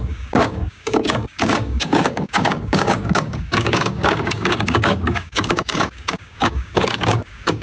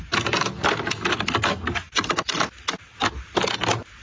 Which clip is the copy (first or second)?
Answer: first